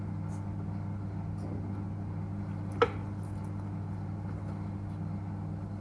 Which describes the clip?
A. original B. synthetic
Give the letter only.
A